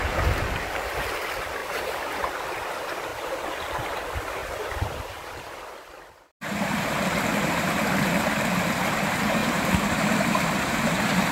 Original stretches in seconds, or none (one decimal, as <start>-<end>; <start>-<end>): 0.0-1.6; 2.3-9.4